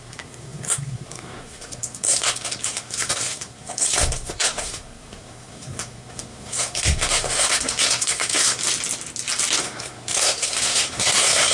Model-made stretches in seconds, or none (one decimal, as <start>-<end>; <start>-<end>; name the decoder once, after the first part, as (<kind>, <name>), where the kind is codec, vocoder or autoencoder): 0.0-8.6 (codec, SNAC); 9.6-11.5

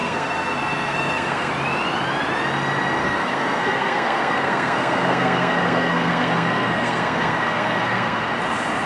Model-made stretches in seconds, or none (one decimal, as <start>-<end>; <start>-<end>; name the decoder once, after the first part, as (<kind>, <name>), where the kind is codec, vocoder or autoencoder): 0.0-1.5 (codec, SNAC); 3.0-8.2

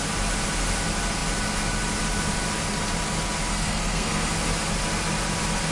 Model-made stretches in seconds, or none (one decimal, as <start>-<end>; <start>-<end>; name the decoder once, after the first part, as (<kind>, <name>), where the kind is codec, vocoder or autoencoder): 3.5-4.3 (codec, SNAC)

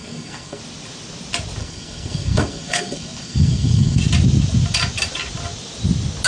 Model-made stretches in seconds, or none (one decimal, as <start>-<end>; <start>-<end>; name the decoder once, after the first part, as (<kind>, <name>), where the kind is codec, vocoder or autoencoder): 0.0-0.6 (codec, SNAC); 1.6-4.0

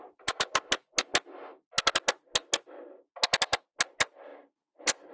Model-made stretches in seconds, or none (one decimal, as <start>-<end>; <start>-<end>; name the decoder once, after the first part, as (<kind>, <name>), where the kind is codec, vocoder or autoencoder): none

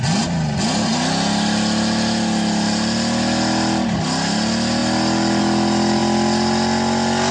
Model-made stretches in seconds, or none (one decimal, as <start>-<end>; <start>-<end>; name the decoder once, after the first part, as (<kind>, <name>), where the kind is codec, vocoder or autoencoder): none